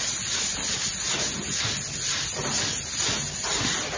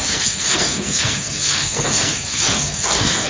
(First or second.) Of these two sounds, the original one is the first